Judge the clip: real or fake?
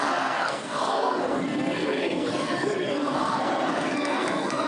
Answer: fake